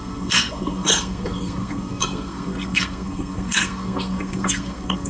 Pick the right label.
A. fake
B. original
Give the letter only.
A